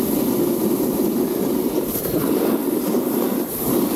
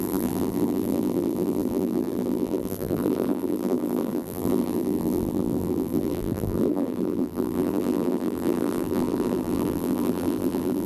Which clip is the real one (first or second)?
first